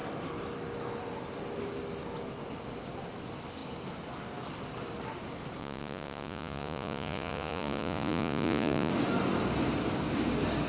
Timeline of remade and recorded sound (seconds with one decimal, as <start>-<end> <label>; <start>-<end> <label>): 0.0-5.6 recorded; 5.6-8.9 remade; 8.9-10.7 recorded